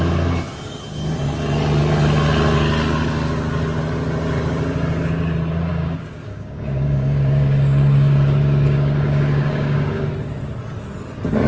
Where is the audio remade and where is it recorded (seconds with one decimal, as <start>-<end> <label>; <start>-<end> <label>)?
0.0-5.7 recorded; 5.7-10.1 remade; 10.1-11.5 recorded